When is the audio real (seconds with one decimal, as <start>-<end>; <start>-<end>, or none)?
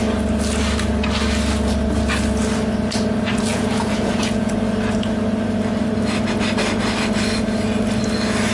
0.0-3.5; 4.5-8.5